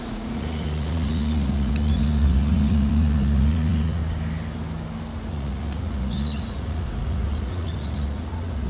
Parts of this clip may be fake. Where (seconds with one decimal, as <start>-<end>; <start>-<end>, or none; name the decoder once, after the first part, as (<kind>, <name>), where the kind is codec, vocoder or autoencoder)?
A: 0.0-4.0 (vocoder, Vocos); 5.2-8.7